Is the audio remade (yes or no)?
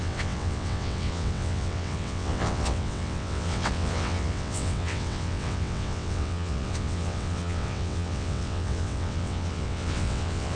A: yes